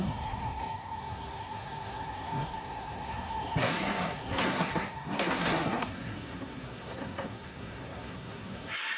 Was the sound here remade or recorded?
remade